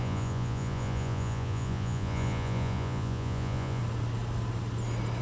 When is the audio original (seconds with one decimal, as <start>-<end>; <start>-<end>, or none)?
3.8-5.2